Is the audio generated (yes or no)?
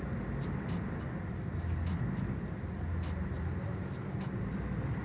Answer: no